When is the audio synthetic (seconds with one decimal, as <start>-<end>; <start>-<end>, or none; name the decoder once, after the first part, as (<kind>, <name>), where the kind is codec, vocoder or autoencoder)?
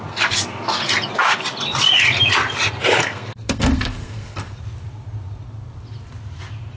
3.0-4.4 (codec, SNAC)